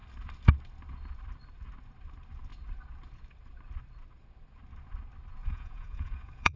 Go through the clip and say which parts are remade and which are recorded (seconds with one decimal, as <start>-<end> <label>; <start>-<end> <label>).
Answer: 0.0-5.4 recorded; 5.4-6.6 remade